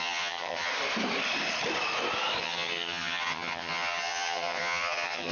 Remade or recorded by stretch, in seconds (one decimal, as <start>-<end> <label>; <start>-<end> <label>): 0.0-0.7 remade; 0.7-2.4 recorded; 2.4-5.3 remade

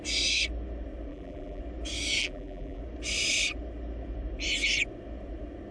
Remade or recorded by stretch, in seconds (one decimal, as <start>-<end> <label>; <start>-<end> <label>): 0.0-1.1 recorded; 1.1-1.6 remade; 1.6-2.2 recorded; 2.2-2.8 remade; 2.8-5.7 recorded